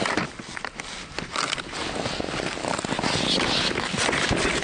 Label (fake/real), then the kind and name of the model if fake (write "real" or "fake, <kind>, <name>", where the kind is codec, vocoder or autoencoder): real